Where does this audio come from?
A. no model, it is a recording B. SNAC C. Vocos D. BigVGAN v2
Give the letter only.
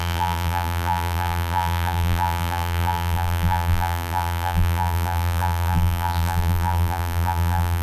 D